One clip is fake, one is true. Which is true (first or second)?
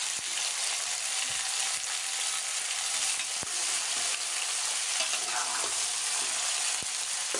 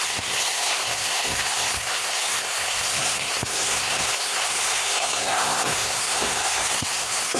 first